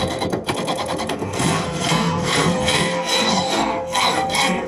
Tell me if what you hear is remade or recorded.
remade